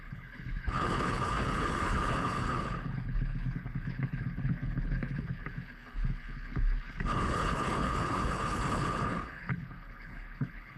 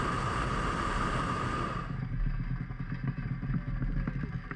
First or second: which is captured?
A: second